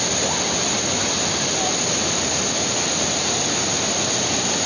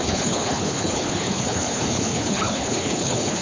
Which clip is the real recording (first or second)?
first